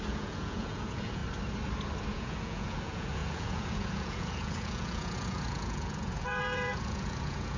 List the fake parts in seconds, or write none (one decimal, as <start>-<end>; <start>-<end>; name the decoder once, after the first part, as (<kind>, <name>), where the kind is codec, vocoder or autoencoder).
0.0-1.2 (vocoder, Vocos); 2.0-7.6